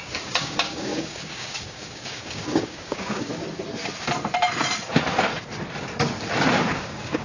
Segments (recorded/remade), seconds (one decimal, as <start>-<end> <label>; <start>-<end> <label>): 0.0-3.3 remade; 3.3-6.7 recorded; 6.7-7.2 remade